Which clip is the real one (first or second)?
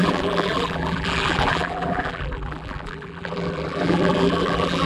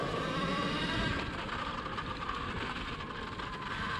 second